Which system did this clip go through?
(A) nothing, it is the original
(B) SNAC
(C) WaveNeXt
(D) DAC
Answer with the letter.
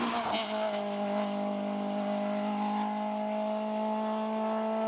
A